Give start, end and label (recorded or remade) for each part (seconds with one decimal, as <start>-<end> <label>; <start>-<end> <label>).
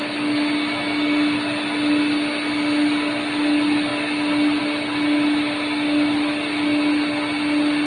0.0-7.9 recorded